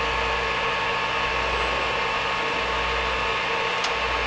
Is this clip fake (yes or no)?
no